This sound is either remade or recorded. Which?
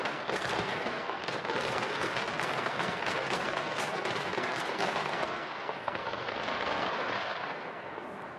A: remade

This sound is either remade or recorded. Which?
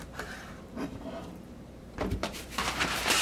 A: remade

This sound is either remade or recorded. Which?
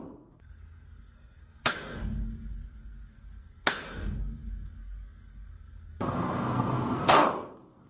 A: remade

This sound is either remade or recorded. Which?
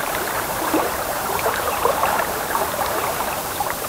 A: remade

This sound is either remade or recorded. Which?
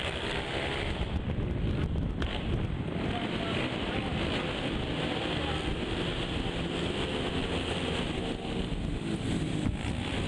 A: recorded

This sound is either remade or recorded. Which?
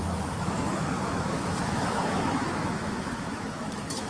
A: remade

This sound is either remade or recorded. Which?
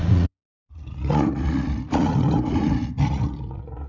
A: remade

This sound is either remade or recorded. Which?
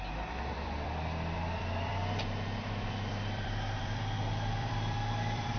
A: remade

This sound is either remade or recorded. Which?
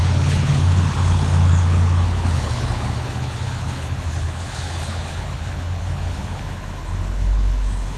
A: remade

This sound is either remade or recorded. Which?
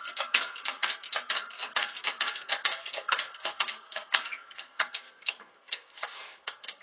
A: remade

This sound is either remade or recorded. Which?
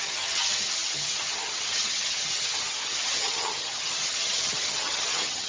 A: remade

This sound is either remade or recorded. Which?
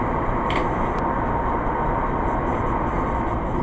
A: recorded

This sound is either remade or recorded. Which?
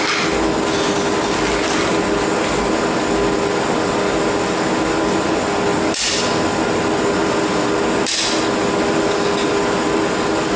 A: recorded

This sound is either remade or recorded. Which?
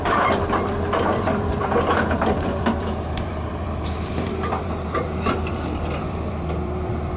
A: remade